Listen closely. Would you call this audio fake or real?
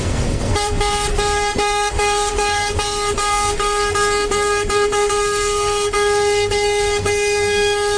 fake